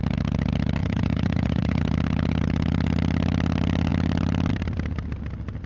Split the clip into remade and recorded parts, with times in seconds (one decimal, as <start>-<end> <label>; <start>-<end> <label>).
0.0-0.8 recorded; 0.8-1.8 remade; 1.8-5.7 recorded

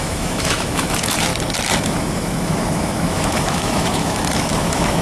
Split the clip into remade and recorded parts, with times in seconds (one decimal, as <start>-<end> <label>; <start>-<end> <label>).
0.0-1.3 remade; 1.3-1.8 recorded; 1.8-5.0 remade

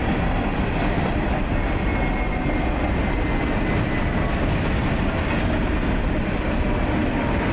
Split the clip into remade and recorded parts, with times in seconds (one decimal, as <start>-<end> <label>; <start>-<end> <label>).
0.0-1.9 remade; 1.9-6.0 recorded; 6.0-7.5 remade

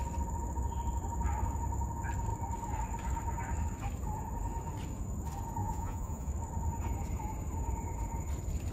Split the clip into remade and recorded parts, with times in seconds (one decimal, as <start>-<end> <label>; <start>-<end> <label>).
0.0-5.6 recorded; 5.6-6.3 remade; 6.3-8.7 recorded

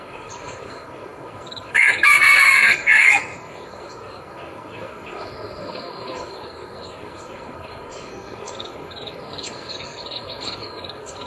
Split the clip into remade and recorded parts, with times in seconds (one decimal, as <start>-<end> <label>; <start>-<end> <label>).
0.0-11.3 remade

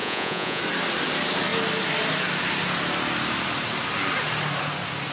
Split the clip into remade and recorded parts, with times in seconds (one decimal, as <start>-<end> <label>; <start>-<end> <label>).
0.0-0.6 remade; 0.6-5.1 recorded

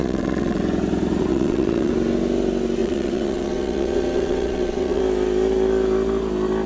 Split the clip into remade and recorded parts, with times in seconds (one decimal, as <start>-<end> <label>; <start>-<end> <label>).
0.0-0.6 remade; 0.6-1.3 recorded; 1.3-1.9 remade; 1.9-2.8 recorded; 2.8-5.0 remade; 5.0-6.7 recorded

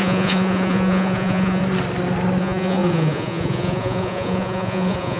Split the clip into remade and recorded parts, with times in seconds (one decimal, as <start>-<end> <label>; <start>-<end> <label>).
0.0-1.6 remade; 1.6-2.4 recorded; 2.4-5.2 remade